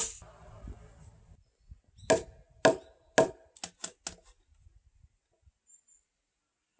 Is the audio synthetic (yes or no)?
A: no